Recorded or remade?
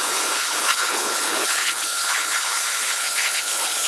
remade